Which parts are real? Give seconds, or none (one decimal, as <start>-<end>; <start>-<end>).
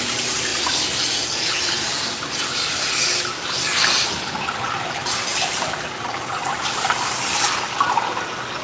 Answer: 0.0-8.6